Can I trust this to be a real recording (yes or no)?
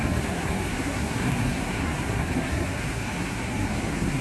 no